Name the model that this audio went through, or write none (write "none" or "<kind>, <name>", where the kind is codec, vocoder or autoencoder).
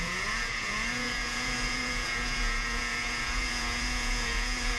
vocoder, Vocos